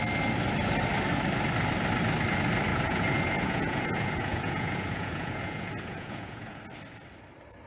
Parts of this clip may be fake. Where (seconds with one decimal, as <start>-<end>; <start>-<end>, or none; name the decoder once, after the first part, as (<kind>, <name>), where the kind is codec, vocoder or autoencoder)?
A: 2.7-6.6 (vocoder, Vocos)